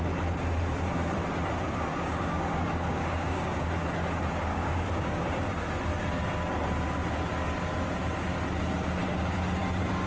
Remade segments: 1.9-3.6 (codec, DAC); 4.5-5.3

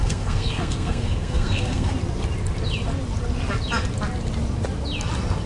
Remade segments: 0.0-1.9 (codec, SNAC)